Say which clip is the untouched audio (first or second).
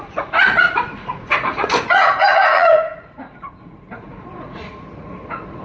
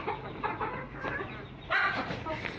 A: second